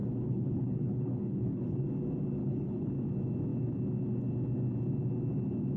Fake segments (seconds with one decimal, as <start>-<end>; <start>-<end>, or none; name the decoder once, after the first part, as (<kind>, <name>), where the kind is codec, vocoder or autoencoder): 0.0-1.9 (codec, HILCodec); 2.4-2.9